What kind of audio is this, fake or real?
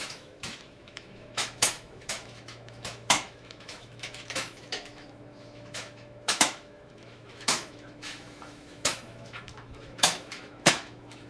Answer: fake